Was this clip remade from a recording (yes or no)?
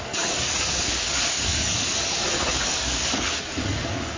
yes